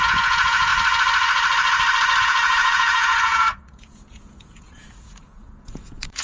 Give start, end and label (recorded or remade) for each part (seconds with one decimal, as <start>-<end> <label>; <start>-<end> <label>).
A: 0.0-0.7 remade; 0.7-2.2 recorded; 2.2-6.2 remade